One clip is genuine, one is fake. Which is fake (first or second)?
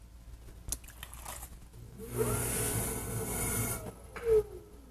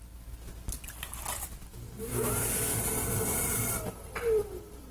second